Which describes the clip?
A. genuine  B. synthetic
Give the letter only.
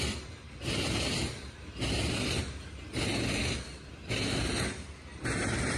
A